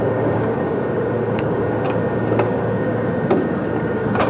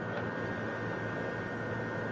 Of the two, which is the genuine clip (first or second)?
second